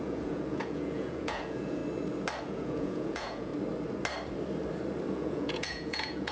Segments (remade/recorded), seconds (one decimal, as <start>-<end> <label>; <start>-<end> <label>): 0.0-1.8 remade; 1.8-2.4 recorded; 2.4-3.5 remade; 3.5-5.1 recorded; 5.1-6.3 remade